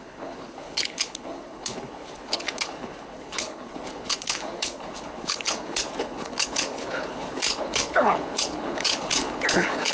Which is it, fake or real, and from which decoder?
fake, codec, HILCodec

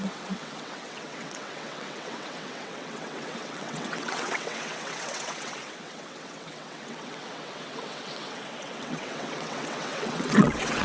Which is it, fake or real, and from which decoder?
fake, vocoder, WaveNeXt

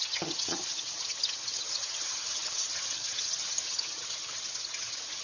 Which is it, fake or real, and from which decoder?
fake, vocoder, HiFi-GAN